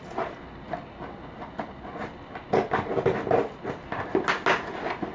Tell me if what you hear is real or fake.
real